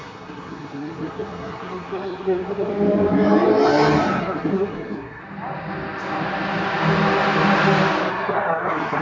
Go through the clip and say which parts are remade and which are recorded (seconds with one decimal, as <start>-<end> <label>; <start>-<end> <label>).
0.0-2.7 remade; 2.7-4.2 recorded; 4.2-5.2 remade; 5.2-8.1 recorded; 8.1-9.0 remade